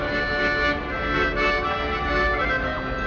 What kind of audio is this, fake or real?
real